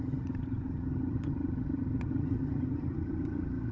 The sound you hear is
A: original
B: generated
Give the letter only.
B